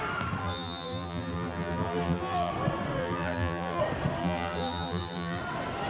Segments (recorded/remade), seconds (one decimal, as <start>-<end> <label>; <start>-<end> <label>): 0.0-0.4 recorded; 0.4-2.5 remade; 2.5-3.0 recorded; 3.0-3.8 remade; 3.8-4.2 recorded; 4.2-5.4 remade; 5.4-5.9 recorded